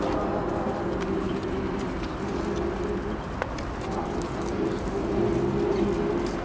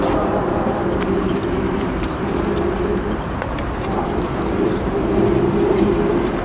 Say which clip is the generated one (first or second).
second